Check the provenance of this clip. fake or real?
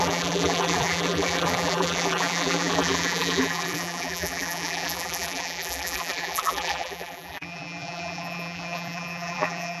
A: fake